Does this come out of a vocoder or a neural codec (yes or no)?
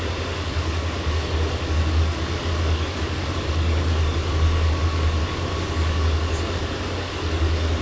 yes